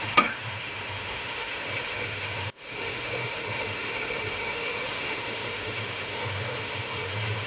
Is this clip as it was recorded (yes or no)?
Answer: no